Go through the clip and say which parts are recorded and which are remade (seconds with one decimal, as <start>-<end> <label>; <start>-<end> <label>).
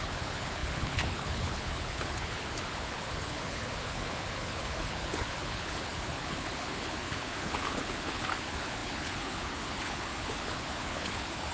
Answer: 0.0-11.5 remade